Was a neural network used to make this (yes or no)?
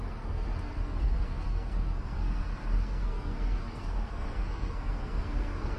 yes